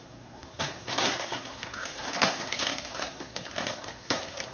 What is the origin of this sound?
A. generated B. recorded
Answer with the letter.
A